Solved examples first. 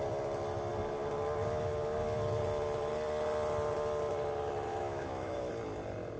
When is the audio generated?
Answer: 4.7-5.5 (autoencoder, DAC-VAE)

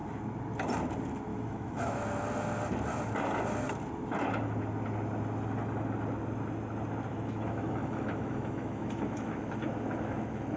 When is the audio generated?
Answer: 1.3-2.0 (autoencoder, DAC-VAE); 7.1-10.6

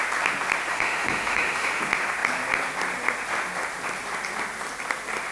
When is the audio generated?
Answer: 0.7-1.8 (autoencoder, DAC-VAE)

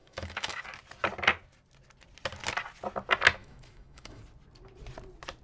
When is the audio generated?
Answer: 0.0-0.6 (autoencoder, DAC-VAE); 3.4-4.2

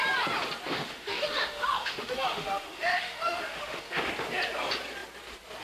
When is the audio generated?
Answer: 0.7-4.1 (autoencoder, DAC-VAE)

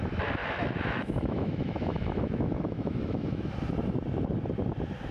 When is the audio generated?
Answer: 0.4-3.5 (autoencoder, DAC-VAE)

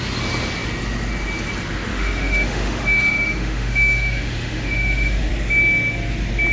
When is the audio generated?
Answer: 1.9-5.3 (autoencoder, DAC-VAE)